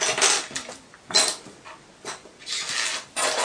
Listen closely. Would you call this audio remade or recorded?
recorded